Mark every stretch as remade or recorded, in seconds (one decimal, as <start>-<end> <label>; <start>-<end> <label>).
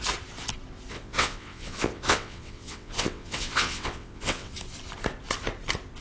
0.0-0.9 recorded; 0.9-4.5 remade; 4.5-6.0 recorded